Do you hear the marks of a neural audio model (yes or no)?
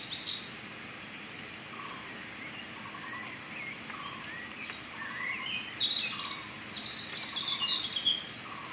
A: no